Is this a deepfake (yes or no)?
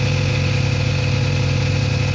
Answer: no